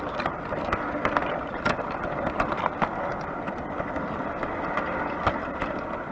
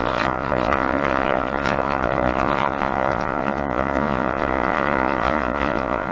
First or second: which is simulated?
second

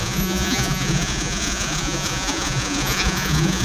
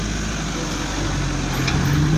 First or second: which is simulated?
first